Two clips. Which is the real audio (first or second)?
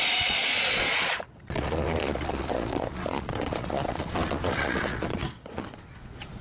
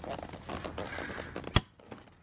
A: second